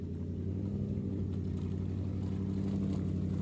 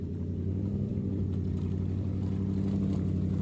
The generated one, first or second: second